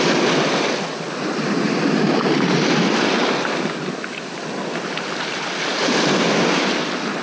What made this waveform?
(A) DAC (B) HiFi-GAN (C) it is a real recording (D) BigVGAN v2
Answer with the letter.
C